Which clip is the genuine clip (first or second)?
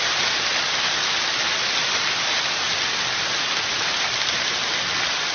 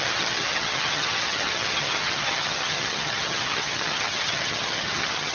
first